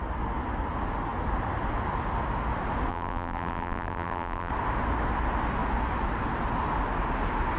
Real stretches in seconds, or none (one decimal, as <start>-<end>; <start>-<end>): 0.0-2.9; 4.5-7.6